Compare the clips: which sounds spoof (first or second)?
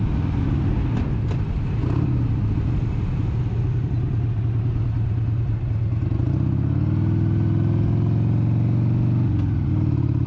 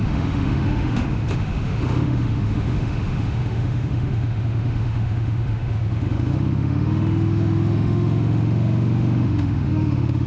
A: second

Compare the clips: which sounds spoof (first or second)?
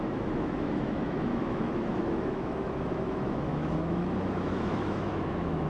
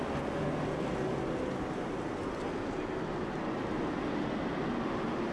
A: first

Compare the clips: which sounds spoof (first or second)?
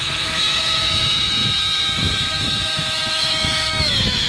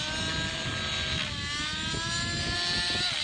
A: first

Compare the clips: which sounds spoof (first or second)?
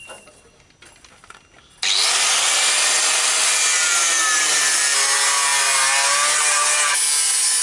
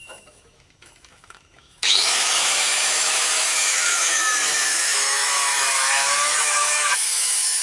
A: second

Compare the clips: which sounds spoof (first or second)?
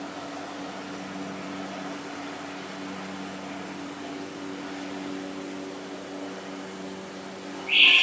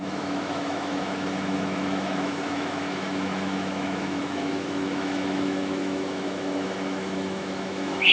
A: second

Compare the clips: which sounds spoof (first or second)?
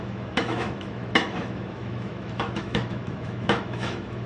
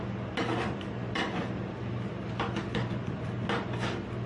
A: first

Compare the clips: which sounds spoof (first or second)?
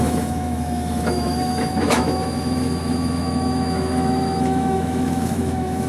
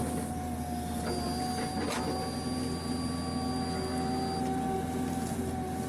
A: first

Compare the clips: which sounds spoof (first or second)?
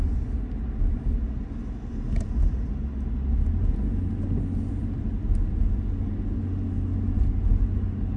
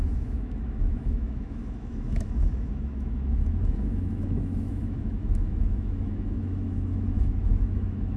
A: second